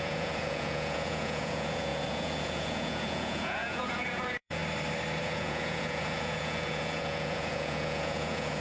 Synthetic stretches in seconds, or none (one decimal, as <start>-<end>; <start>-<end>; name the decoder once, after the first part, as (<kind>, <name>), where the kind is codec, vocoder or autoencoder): 0.0-4.6 (vocoder, Vocos); 5.2-8.6